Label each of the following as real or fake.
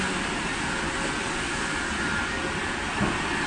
real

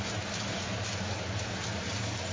real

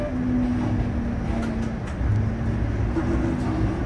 real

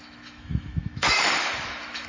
fake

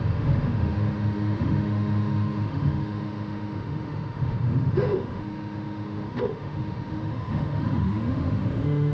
fake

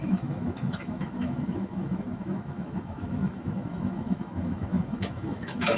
fake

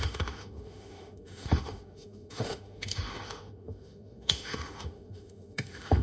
fake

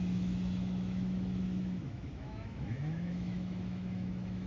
fake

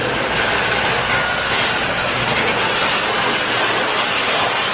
real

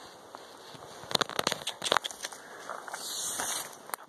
real